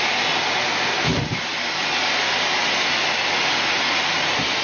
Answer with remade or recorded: recorded